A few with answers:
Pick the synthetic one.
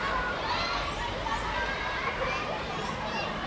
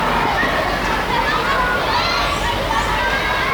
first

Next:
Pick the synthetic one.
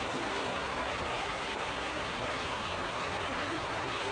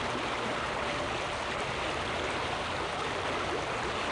first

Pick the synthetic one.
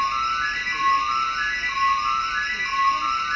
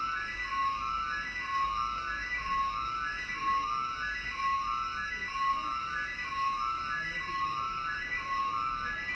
second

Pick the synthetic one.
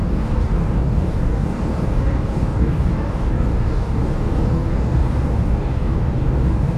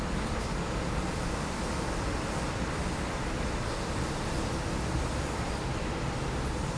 first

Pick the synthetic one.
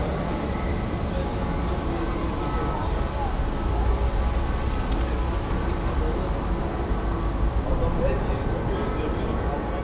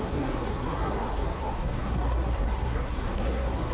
second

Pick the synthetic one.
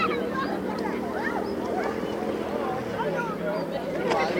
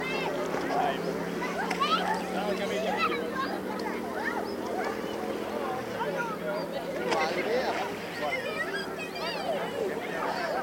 first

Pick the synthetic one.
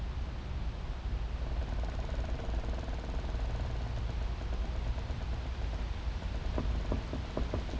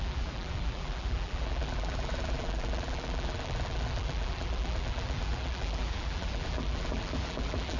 second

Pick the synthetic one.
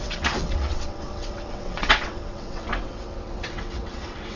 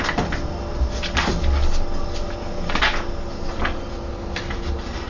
first